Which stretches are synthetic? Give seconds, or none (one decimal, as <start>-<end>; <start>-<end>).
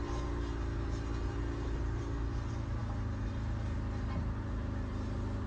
none